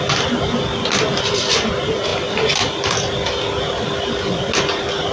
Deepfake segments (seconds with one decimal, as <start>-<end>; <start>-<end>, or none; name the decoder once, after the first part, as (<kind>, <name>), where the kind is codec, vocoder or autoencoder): none